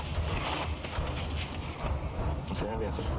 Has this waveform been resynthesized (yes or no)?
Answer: no